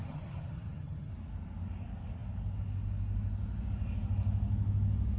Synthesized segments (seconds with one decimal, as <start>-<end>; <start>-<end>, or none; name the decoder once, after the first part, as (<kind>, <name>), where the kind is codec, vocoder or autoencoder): 0.0-1.1 (vocoder, HiFi-GAN)